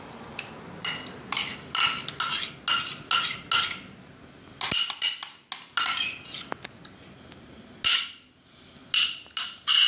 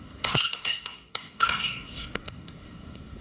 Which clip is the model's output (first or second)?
second